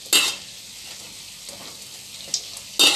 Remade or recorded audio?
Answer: recorded